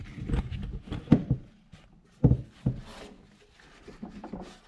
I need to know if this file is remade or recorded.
recorded